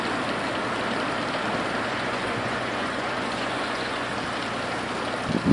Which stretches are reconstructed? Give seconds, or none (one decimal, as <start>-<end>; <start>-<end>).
1.9-4.1